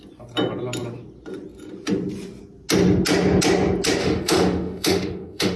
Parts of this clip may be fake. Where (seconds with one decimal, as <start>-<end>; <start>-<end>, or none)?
4.0-5.6